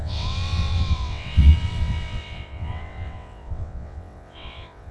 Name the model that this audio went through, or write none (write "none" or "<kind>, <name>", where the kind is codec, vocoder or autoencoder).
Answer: vocoder, WaveNeXt